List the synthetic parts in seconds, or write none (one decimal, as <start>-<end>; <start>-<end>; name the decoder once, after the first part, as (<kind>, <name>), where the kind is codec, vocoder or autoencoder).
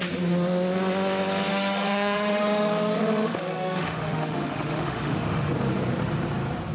1.5-5.5 (autoencoder, DAC-VAE)